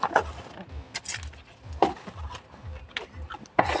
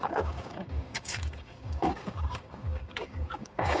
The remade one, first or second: second